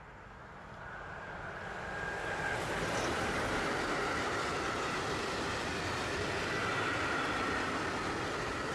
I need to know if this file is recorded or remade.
recorded